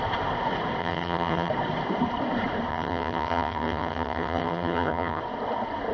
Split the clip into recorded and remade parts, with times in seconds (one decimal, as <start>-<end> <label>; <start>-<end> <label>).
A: 0.0-0.8 recorded; 0.8-1.5 remade; 1.5-2.7 recorded; 2.7-5.2 remade; 5.2-5.9 recorded